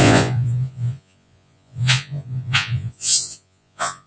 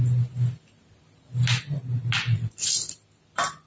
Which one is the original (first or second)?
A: second